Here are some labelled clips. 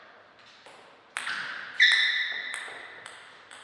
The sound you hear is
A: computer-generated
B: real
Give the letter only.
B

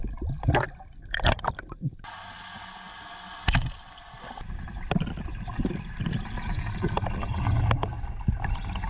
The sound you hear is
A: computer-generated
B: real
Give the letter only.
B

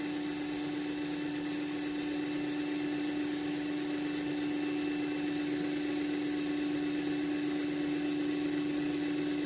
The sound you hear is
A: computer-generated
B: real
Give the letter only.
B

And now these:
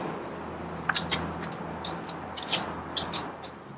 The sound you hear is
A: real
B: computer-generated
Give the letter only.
A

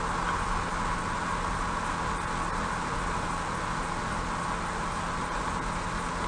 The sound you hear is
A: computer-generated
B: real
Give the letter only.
B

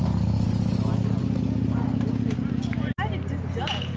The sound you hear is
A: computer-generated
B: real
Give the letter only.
B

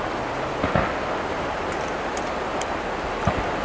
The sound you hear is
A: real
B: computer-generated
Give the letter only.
A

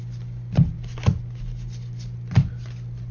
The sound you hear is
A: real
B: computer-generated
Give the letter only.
A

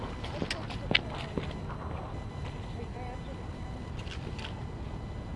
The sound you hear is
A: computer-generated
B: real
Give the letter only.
B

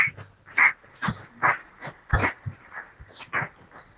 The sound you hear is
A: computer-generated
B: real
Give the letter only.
B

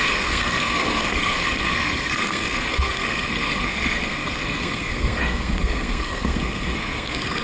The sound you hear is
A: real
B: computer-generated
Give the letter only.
B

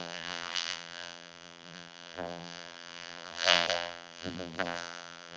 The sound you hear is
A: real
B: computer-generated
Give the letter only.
B